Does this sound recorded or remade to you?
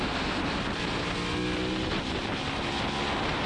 recorded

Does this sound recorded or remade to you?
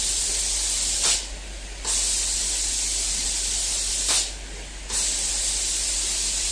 recorded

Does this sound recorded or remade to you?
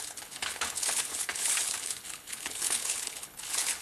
remade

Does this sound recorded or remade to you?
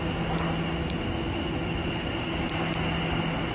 recorded